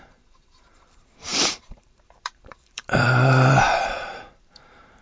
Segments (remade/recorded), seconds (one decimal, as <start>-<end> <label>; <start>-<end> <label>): 0.0-5.0 remade